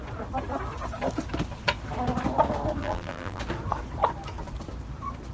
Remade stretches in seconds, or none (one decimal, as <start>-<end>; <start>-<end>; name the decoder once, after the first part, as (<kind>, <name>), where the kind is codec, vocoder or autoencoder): 2.8-3.4 (vocoder, BigVGAN v2)